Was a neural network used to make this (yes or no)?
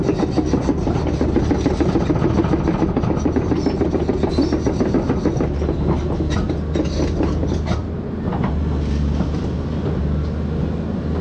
no